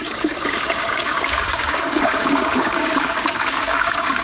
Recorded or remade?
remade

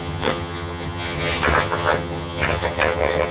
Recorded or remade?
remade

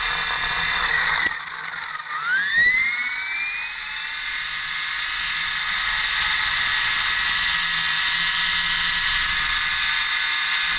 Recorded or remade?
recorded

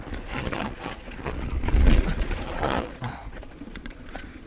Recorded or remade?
remade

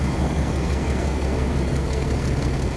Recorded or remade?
remade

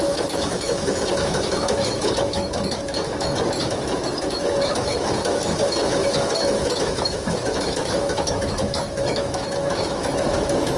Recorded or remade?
remade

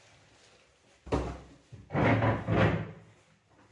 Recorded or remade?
recorded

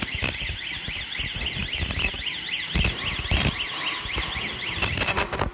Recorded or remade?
recorded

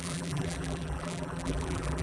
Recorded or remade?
remade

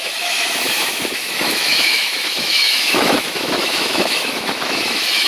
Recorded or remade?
remade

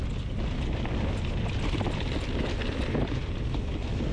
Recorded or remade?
recorded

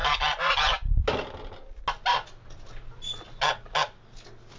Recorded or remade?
recorded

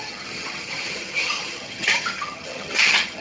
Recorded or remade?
remade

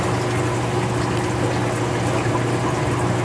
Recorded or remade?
recorded